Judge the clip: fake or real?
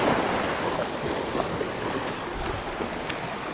real